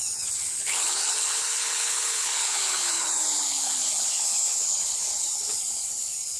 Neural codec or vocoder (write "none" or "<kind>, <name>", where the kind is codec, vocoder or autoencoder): codec, HILCodec